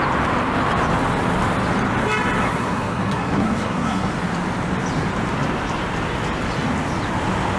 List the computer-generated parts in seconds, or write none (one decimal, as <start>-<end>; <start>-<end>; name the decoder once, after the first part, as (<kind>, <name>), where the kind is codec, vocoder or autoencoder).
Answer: 2.4-4.1 (codec, SNAC)